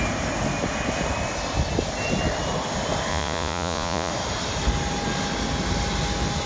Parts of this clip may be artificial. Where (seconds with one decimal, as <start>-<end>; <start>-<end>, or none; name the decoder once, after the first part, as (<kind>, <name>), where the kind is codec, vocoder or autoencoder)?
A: 3.1-4.1 (vocoder, Vocos)